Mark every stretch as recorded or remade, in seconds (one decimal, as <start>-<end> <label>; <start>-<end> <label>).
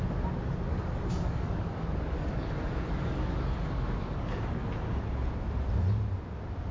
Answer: 0.0-0.7 recorded; 0.7-4.6 remade; 4.6-6.7 recorded